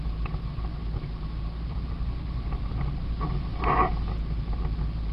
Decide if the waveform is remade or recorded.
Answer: recorded